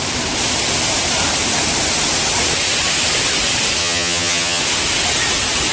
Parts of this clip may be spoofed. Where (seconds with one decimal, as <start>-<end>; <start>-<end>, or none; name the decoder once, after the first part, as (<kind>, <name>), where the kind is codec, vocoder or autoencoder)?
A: 3.8-4.6 (vocoder, HiFi-GAN)